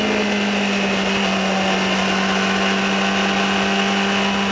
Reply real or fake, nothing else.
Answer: real